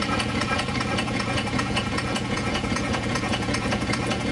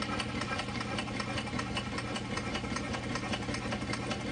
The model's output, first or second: first